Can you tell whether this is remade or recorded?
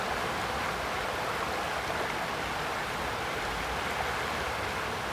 recorded